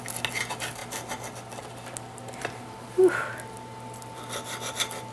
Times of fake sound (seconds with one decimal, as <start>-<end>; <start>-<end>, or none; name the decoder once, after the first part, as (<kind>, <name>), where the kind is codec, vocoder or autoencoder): none

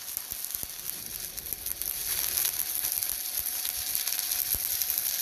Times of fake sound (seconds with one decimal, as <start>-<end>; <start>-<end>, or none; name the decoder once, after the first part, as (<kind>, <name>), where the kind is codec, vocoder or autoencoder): none

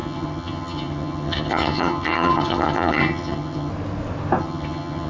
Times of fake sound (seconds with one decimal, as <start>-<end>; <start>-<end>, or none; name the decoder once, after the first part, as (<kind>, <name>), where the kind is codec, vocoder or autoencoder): 0.0-3.7 (vocoder, HiFi-GAN); 4.4-5.1

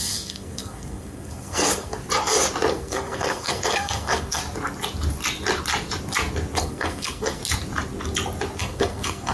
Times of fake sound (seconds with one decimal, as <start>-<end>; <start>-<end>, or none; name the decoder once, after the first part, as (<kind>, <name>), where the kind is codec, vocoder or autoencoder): 0.0-2.0 (codec, SNAC); 2.7-4.4; 6.6-7.4; 8.6-9.3

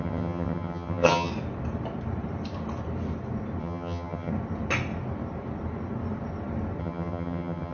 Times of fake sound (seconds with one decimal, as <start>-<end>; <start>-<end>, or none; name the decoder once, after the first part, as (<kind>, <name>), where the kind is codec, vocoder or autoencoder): 0.0-1.3 (vocoder, HiFi-GAN); 3.6-4.3; 6.8-7.7

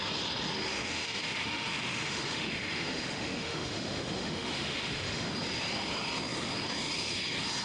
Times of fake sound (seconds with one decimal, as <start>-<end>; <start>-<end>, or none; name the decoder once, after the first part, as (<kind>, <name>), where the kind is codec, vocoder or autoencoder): 0.7-5.3 (autoencoder, DAC-VAE)

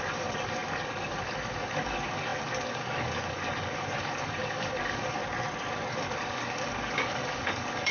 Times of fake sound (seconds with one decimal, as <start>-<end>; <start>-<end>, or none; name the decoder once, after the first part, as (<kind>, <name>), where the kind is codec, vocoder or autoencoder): 0.0-5.2 (codec, DAC); 5.9-7.9

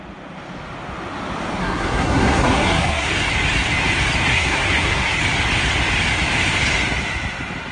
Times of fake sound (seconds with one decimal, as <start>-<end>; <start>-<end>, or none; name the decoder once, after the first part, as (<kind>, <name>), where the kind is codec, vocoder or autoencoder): 1.6-3.1 (codec, SNAC); 4.3-5.2